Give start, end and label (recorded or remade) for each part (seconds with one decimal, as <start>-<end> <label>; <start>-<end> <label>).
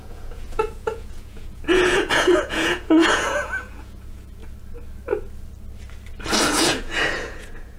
0.0-4.4 remade; 4.4-6.5 recorded; 6.5-7.8 remade